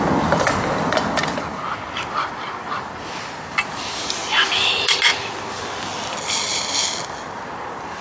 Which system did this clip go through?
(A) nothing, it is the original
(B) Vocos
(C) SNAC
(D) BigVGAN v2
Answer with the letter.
A